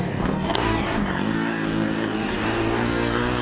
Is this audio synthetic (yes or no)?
yes